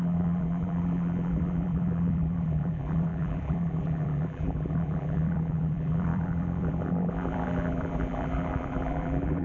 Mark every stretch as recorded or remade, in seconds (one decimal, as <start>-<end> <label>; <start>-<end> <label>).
0.0-9.4 remade